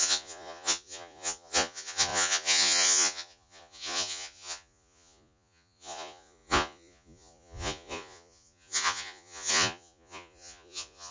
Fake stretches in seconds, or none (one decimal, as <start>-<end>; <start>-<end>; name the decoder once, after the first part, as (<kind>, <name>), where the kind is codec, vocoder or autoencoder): 0.0-11.1 (vocoder, Vocos)